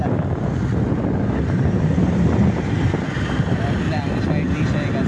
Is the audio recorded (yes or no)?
yes